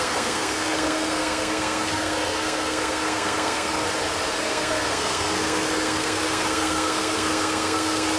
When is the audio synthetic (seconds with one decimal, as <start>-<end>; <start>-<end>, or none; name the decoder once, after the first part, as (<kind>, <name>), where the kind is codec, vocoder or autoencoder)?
0.0-3.8 (codec, SNAC); 4.4-8.2